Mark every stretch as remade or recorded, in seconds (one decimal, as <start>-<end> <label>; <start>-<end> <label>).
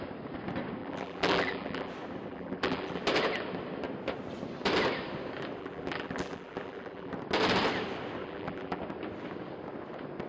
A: 0.0-0.8 recorded; 0.8-1.9 remade; 1.9-2.3 recorded; 2.3-3.0 remade; 3.0-5.6 recorded; 5.6-7.1 remade; 7.1-8.2 recorded; 8.2-8.8 remade; 8.8-10.3 recorded